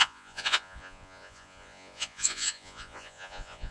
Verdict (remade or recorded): remade